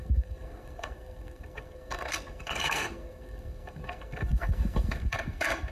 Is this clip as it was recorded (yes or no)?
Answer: no